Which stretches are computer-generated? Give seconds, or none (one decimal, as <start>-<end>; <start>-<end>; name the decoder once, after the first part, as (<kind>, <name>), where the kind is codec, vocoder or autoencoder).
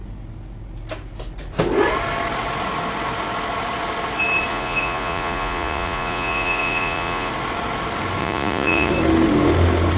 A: 4.5-7.3 (vocoder, Vocos); 8.2-8.9